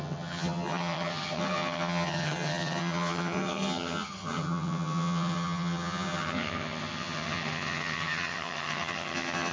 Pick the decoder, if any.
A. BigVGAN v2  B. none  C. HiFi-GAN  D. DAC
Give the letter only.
C